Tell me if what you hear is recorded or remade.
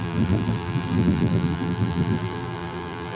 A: remade